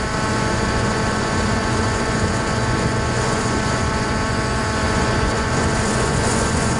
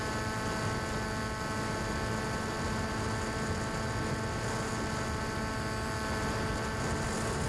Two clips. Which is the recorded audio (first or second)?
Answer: second